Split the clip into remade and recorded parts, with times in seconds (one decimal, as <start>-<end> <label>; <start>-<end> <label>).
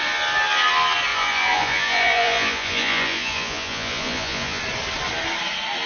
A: 0.0-1.1 recorded; 1.1-4.6 remade; 4.6-5.9 recorded